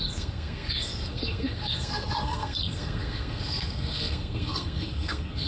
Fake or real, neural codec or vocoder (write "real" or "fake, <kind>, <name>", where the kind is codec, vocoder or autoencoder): fake, codec, SNAC